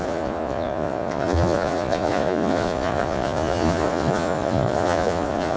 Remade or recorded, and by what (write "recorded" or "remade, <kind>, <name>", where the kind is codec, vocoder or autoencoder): remade, vocoder, Vocos